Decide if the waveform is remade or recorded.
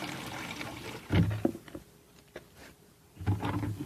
remade